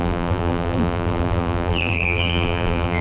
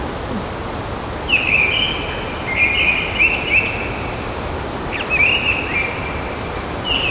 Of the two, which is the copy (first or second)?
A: first